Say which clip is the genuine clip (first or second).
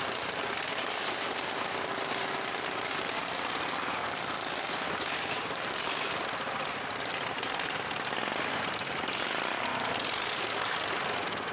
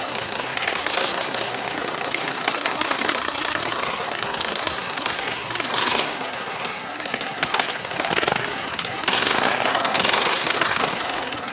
first